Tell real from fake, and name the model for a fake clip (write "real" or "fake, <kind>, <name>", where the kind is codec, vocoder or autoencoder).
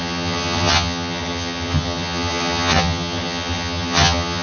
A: fake, vocoder, HiFi-GAN